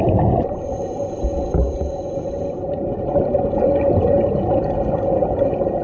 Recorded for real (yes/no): yes